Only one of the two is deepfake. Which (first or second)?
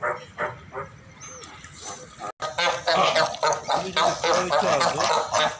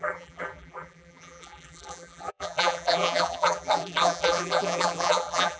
second